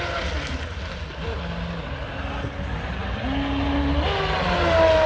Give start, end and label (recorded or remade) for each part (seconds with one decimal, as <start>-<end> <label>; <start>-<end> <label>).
0.0-5.1 recorded